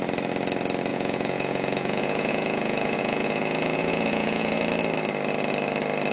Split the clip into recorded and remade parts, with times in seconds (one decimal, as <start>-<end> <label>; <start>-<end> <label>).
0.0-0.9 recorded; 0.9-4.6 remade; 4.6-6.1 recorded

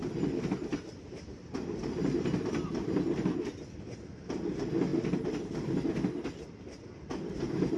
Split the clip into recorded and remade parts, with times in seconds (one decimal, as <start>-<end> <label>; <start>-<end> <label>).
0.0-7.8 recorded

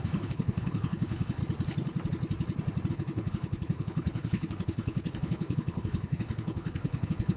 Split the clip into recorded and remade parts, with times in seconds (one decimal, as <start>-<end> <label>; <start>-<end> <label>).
0.0-1.4 remade; 1.4-2.9 recorded; 2.9-7.4 remade

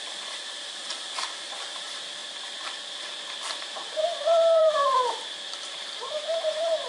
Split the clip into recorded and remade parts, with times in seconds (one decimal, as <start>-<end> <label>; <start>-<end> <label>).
0.0-2.2 remade; 2.2-3.6 recorded; 3.6-6.9 remade